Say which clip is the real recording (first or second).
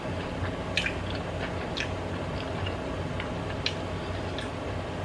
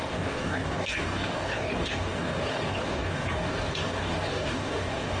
first